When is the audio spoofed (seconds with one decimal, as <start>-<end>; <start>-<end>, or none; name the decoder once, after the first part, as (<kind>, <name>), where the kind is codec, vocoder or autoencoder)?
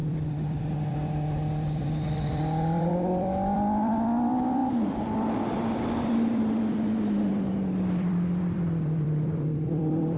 0.0-10.2 (vocoder, BigVGAN v2)